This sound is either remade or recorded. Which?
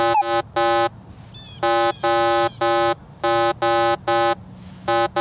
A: recorded